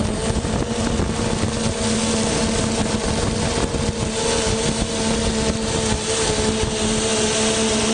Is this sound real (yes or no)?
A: yes